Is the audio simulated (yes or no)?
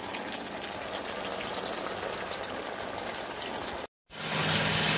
no